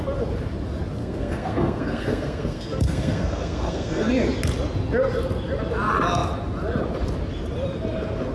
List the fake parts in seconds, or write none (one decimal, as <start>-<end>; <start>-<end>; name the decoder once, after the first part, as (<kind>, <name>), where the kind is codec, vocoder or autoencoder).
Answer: 1.0-4.1 (codec, SNAC)